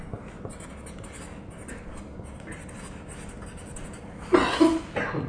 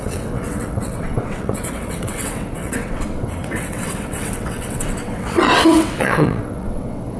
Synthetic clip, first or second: second